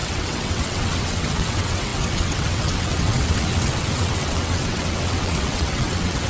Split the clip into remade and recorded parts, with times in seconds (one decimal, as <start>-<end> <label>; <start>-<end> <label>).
0.0-6.3 remade